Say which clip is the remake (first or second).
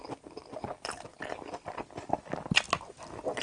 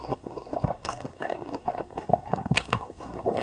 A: second